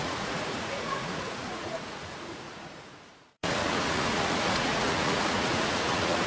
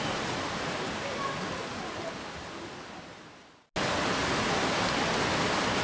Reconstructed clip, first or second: first